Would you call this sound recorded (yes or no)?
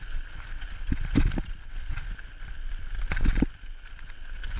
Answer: yes